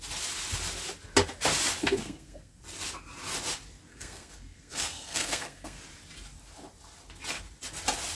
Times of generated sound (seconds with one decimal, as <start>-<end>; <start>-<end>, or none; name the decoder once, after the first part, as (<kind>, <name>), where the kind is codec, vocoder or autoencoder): 1.8-2.6 (codec, SNAC); 3.9-5.8